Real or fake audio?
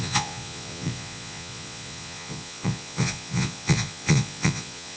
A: fake